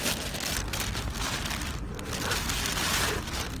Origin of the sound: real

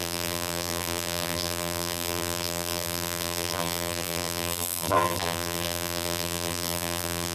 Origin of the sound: fake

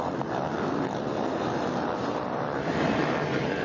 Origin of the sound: fake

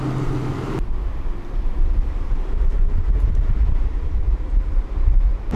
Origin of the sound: fake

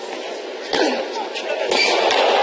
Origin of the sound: real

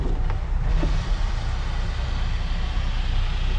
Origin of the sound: real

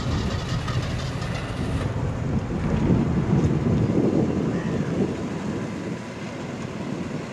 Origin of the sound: real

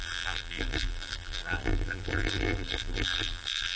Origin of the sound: fake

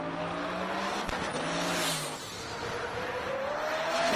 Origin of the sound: real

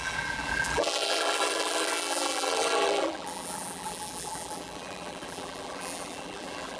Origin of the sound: fake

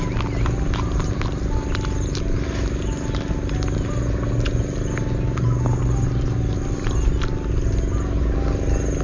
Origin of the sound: real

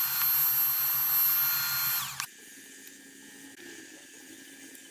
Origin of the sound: real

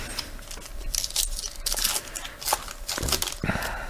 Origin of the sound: real